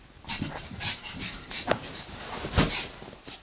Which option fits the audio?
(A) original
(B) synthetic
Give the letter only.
B